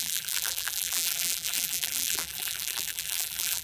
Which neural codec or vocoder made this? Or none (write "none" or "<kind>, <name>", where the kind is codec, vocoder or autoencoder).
vocoder, BigVGAN v2